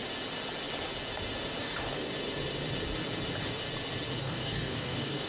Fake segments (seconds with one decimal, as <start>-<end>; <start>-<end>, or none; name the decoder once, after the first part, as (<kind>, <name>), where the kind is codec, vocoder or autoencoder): 1.6-2.1 (codec, DAC); 4.2-5.3